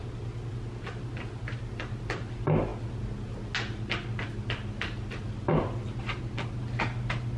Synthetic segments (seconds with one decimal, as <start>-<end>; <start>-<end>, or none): none